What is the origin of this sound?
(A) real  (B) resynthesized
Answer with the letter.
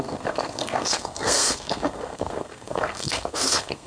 B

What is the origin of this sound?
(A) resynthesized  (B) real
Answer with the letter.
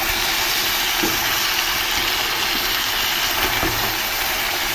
B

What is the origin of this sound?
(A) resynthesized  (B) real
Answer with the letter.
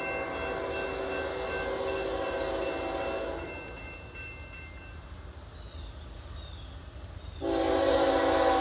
B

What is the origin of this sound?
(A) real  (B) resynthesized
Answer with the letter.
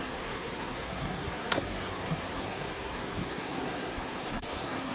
B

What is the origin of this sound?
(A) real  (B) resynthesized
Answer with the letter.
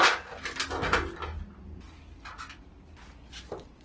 A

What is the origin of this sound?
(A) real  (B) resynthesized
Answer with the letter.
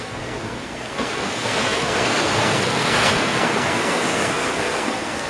B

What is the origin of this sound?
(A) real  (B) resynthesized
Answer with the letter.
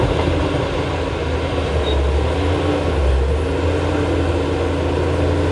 A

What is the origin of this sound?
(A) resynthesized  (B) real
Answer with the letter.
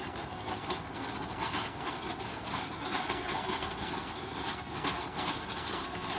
A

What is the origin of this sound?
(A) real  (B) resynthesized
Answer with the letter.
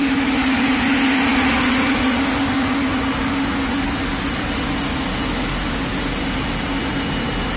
A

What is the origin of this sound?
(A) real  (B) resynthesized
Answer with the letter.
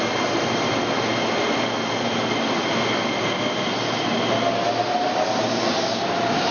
A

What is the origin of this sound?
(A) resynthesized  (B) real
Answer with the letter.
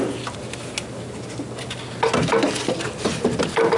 B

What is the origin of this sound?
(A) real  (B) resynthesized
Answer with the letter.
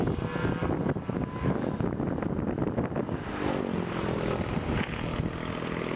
A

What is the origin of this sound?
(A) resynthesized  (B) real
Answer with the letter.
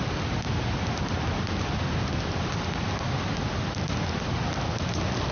B